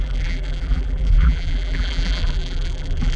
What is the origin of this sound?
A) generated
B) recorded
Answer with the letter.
A